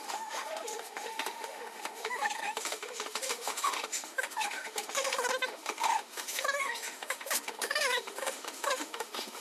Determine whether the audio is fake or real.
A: fake